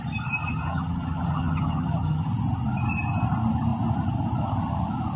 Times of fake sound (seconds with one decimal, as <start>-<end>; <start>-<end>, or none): 0.4-2.3